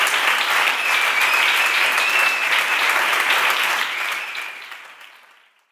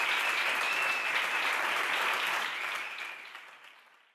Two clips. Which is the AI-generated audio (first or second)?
second